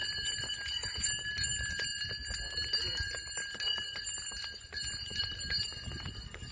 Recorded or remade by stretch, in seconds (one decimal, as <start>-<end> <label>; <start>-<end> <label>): 0.0-6.5 recorded